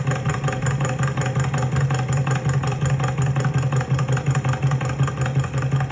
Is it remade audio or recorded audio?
recorded